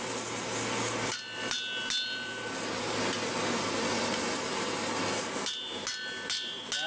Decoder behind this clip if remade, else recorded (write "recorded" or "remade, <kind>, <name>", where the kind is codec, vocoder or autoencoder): recorded